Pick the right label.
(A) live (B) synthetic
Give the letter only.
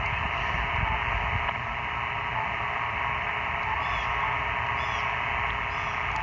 A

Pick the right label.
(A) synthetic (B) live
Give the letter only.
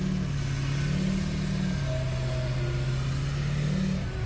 B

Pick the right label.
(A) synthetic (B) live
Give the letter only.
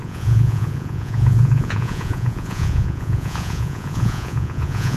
A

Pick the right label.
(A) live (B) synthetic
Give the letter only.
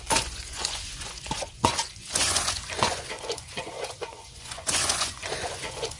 B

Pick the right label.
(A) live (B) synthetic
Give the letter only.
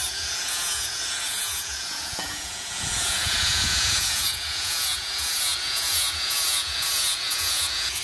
B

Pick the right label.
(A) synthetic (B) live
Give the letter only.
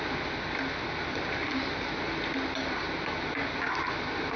B